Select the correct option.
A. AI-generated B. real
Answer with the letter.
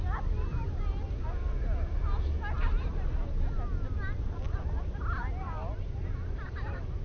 B